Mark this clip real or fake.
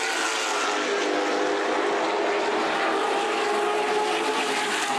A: real